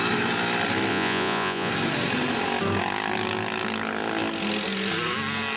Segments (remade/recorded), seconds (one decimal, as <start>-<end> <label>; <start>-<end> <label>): 0.0-0.9 recorded; 0.9-1.7 remade; 1.7-5.6 recorded